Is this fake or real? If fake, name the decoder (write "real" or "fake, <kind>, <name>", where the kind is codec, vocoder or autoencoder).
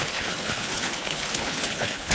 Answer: fake, codec, HILCodec